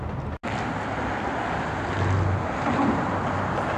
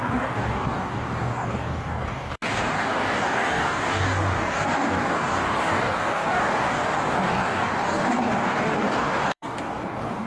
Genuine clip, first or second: first